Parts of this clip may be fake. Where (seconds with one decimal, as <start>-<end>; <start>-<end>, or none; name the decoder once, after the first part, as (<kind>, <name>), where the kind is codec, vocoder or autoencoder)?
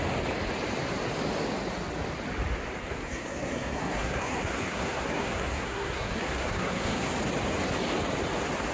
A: 2.8-7.1 (codec, SNAC)